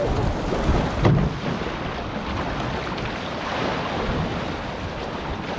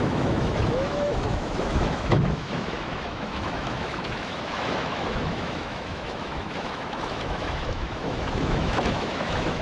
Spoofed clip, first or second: second